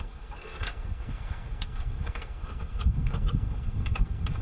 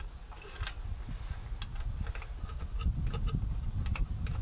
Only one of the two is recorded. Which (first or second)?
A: second